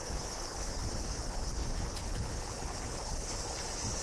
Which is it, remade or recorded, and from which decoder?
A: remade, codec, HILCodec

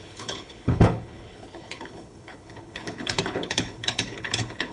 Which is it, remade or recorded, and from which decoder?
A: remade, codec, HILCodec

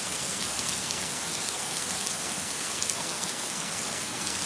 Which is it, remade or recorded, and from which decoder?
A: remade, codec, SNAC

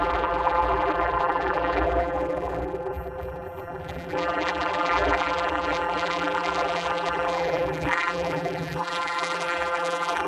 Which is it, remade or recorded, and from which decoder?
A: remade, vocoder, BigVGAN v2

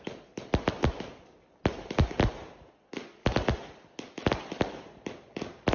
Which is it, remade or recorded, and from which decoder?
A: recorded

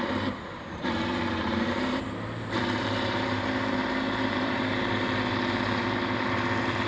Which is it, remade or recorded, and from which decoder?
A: remade, vocoder, BigVGAN v2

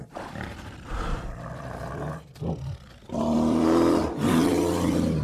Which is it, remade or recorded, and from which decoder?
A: remade, vocoder, BigVGAN v2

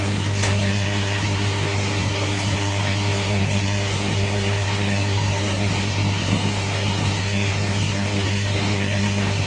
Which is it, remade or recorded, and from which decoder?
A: remade, codec, SNAC